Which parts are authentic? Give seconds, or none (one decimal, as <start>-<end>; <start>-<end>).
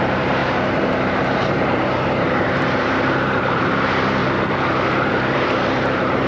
4.2-5.1